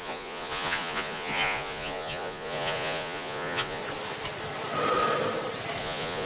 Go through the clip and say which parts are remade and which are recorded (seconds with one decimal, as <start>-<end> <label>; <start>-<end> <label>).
0.0-3.8 remade; 3.8-5.8 recorded; 5.8-6.3 remade